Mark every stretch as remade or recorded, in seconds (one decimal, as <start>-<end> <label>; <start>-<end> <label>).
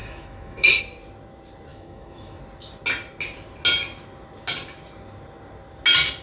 0.0-0.8 remade; 0.8-1.7 recorded; 1.7-2.4 remade; 2.4-6.2 recorded